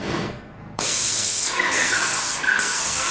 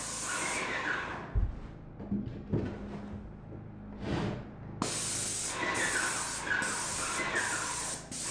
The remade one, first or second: first